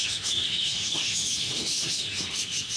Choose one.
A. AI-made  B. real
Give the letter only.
A